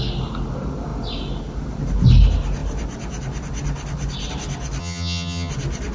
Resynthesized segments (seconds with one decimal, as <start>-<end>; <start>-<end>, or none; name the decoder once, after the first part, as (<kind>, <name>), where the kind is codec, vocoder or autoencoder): 4.8-5.5 (vocoder, HiFi-GAN)